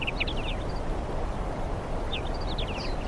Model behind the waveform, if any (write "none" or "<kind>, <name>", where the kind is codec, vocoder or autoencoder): none